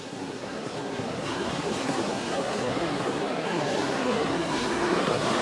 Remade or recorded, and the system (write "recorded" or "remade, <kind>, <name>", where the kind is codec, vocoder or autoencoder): remade, codec, SNAC